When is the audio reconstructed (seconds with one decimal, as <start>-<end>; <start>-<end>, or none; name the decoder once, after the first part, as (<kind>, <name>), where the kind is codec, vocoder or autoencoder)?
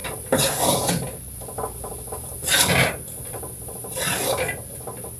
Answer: none